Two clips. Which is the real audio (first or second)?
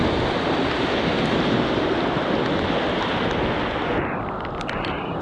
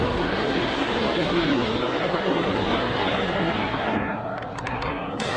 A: first